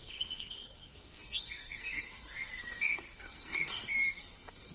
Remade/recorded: remade